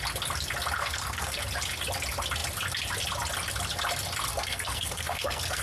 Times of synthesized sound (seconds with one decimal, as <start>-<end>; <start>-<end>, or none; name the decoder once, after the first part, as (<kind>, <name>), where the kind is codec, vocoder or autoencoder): 0.8-1.4 (codec, SNAC); 4.3-5.6